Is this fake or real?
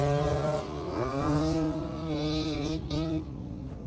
fake